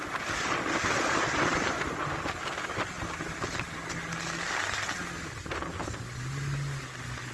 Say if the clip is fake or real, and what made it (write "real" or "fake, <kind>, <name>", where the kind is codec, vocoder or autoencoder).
real